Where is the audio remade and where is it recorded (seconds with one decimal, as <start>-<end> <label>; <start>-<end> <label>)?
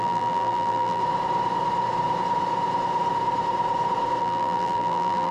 0.0-1.0 remade; 1.0-4.2 recorded; 4.2-5.3 remade